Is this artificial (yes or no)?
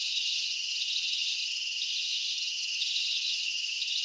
yes